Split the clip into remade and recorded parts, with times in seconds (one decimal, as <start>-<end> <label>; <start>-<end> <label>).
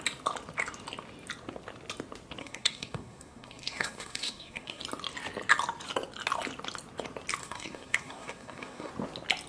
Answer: 0.0-2.4 recorded; 2.4-4.8 remade; 4.8-7.4 recorded; 7.4-8.9 remade; 8.9-9.5 recorded